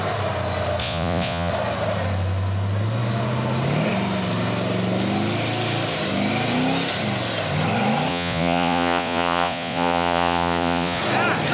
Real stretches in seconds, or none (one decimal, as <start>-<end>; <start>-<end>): 0.0-0.8; 1.5-8.1; 11.0-11.5